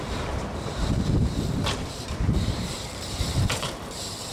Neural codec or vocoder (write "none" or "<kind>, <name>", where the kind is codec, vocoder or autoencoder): vocoder, BigVGAN v2